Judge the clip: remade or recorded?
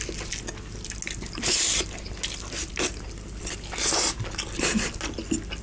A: recorded